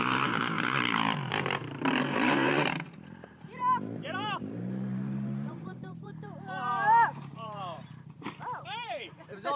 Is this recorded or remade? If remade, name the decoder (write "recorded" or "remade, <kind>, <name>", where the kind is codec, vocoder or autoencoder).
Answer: remade, vocoder, BigVGAN v2